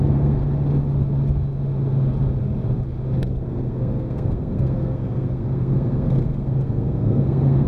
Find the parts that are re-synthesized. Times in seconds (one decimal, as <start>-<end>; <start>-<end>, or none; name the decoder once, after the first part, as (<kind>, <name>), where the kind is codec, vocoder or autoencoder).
0.0-0.4 (codec, SNAC); 3.2-7.7